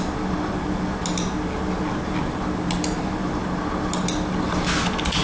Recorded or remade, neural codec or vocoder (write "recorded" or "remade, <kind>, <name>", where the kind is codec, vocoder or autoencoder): recorded